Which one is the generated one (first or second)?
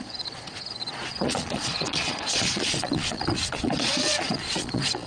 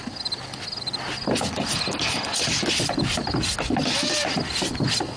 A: first